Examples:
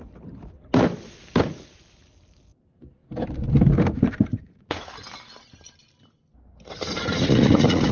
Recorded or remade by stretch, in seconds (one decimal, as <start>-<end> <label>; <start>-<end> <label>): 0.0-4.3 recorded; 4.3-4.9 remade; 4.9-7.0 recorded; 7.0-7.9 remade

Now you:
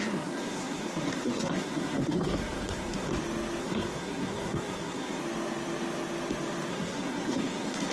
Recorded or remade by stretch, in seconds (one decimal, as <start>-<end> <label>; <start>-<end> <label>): 0.0-3.1 remade; 3.1-3.6 recorded; 3.6-5.2 remade; 5.2-6.7 recorded; 6.7-7.9 remade

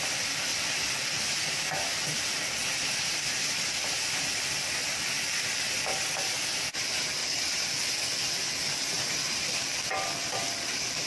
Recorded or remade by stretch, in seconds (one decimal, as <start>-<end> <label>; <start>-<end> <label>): 0.0-0.5 recorded; 0.5-2.9 remade; 2.9-7.2 recorded; 7.2-11.1 remade

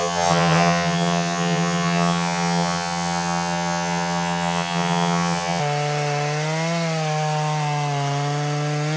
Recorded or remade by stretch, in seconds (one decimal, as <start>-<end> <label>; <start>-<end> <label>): 0.0-5.6 remade; 5.6-9.0 recorded

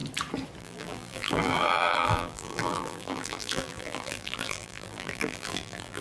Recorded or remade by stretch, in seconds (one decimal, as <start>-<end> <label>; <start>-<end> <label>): 0.0-0.6 recorded; 0.6-6.0 remade